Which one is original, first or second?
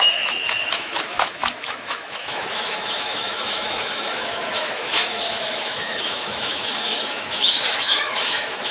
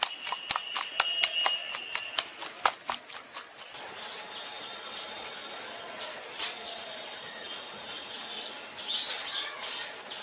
second